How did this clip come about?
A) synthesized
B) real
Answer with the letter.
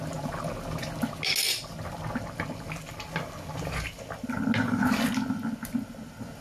B